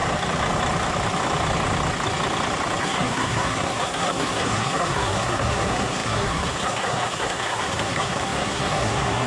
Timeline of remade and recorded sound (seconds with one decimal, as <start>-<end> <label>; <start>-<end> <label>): 0.0-2.8 recorded; 2.8-9.3 remade